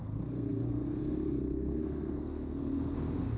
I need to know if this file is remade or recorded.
remade